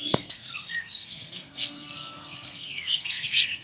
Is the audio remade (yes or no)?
yes